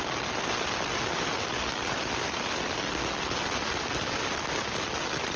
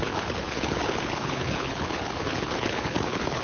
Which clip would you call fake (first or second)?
second